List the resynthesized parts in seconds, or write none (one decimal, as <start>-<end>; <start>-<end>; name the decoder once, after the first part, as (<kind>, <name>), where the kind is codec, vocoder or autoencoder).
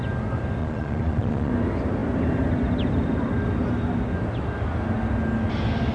0.6-1.5 (vocoder, Vocos)